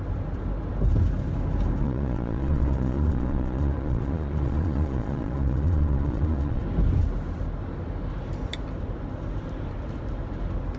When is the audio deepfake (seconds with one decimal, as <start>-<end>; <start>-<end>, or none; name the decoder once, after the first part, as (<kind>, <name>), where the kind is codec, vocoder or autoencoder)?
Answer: 1.8-6.6 (vocoder, Vocos)